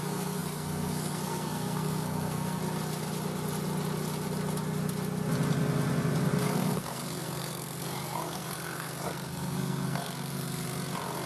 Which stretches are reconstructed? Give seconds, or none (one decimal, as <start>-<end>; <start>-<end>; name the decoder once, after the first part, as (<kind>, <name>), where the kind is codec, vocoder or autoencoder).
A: 0.0-2.6 (codec, SNAC); 6.4-10.7